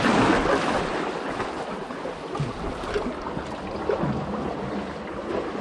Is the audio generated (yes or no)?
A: no